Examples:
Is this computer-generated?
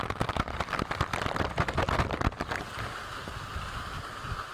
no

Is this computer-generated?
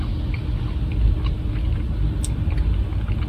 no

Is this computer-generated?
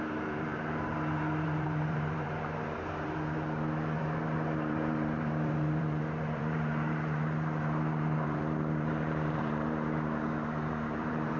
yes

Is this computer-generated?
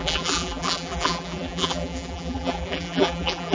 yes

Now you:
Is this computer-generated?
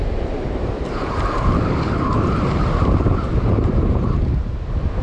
yes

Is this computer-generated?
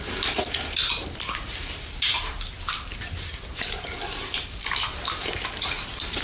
yes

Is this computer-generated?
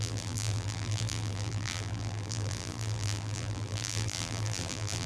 yes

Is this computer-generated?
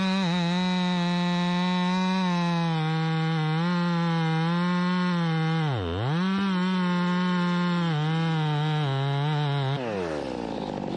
no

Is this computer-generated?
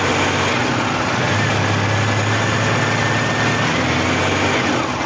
no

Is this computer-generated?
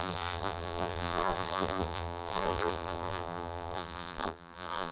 yes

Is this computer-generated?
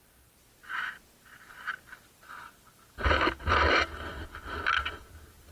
no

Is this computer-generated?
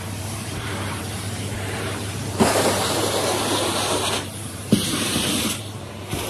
yes